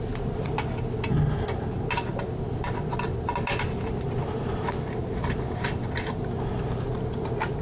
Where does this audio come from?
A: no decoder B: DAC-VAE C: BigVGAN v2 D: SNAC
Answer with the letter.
A